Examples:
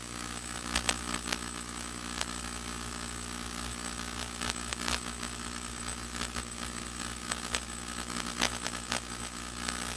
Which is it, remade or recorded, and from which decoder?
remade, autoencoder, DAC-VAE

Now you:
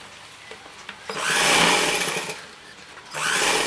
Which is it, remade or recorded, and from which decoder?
recorded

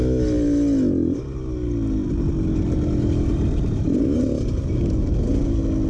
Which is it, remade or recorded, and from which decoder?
recorded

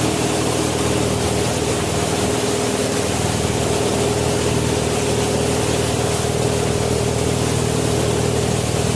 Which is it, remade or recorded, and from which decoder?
recorded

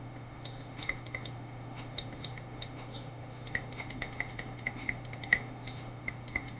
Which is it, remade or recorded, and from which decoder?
remade, autoencoder, DAC-VAE